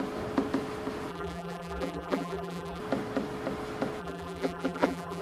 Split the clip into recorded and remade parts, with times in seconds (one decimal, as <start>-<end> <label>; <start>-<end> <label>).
0.0-1.1 recorded; 1.1-2.8 remade; 2.8-4.0 recorded; 4.0-5.2 remade